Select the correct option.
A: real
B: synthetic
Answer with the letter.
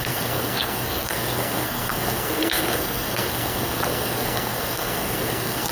B